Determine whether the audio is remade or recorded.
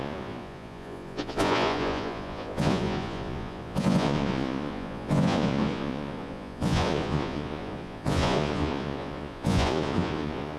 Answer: remade